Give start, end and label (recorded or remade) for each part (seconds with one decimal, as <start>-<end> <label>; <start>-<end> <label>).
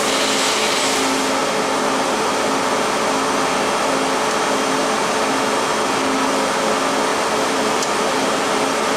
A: 0.0-1.4 recorded; 1.4-2.3 remade; 2.3-7.1 recorded; 7.1-9.0 remade